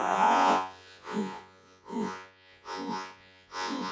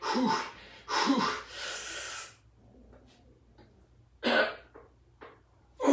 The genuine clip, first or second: second